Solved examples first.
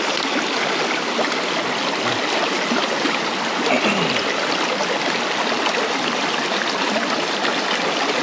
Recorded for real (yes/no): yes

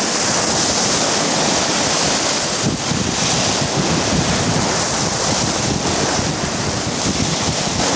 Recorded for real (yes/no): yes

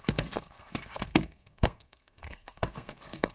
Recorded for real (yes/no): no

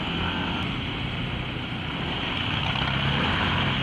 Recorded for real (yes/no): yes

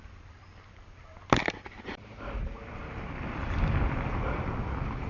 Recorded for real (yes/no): no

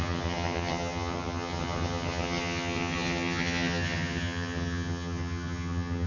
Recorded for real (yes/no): no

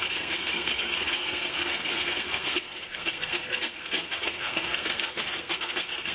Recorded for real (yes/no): no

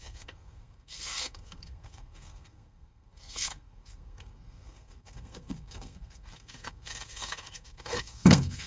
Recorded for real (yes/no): no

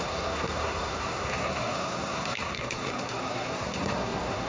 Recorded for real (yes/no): no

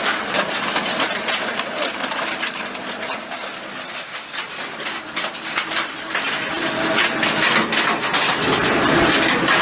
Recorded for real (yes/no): yes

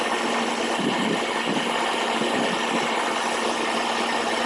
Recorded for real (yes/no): yes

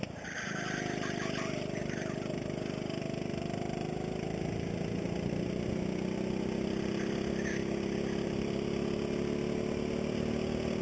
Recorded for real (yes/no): yes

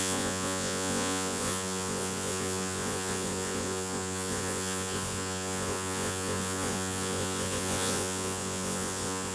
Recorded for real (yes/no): no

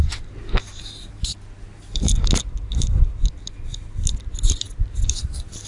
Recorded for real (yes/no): yes